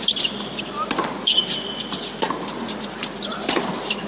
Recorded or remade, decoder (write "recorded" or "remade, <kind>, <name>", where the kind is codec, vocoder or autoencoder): recorded